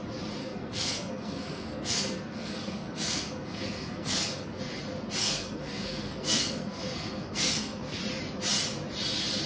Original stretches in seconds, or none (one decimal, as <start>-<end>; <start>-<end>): 0.0-0.4; 4.6-5.2; 8.0-9.5